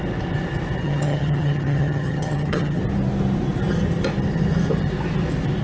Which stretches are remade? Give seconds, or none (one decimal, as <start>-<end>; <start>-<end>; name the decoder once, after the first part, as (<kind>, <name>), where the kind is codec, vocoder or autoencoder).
0.8-2.8 (vocoder, HiFi-GAN)